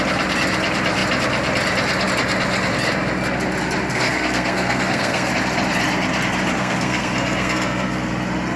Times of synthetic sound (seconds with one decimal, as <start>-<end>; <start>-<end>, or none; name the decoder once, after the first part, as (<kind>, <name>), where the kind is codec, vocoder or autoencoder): 3.9-5.3 (codec, SNAC); 6.6-8.1